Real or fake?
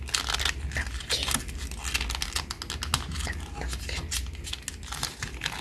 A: real